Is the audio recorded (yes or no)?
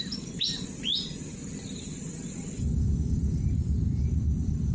yes